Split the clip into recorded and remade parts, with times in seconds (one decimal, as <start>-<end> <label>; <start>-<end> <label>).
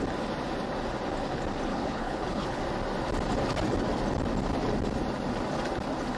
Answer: 0.0-1.7 recorded; 1.7-2.6 remade; 2.6-6.2 recorded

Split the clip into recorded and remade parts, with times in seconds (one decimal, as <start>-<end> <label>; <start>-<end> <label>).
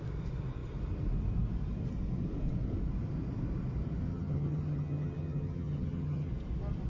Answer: 0.0-4.1 recorded; 4.1-6.3 remade; 6.3-6.9 recorded